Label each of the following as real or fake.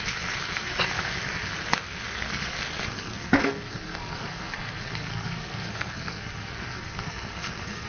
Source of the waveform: fake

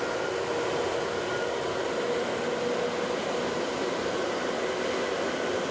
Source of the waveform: real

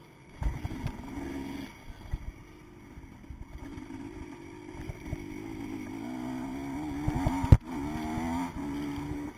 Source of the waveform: real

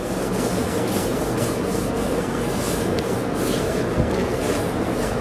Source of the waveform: fake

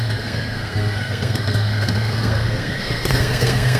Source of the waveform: fake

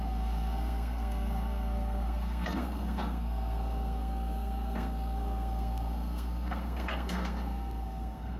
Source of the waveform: fake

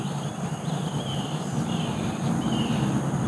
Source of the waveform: real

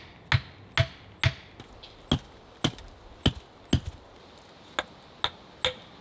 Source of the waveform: real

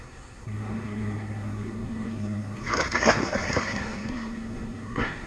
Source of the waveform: fake